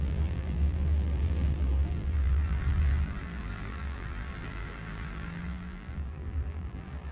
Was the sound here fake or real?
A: fake